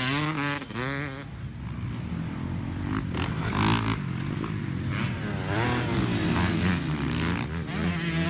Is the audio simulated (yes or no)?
no